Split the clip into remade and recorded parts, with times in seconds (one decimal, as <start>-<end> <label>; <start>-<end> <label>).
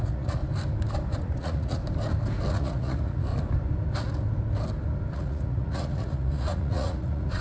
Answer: 0.0-0.4 remade; 0.4-1.2 recorded; 1.2-1.8 remade; 1.8-2.5 recorded; 2.5-3.3 remade; 3.3-5.1 recorded; 5.1-7.4 remade